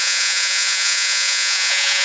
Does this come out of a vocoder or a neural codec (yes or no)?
yes